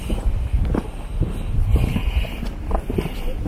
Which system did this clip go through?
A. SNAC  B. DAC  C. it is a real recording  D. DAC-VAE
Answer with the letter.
C